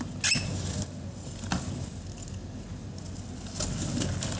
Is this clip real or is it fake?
real